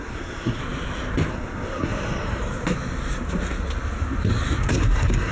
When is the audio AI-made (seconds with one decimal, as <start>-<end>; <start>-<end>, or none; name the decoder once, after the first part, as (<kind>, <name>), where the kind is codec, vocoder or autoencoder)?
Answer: 0.0-0.6 (codec, SNAC); 1.3-1.9; 4.7-5.3